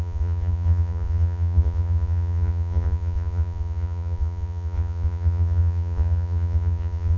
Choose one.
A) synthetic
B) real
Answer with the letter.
A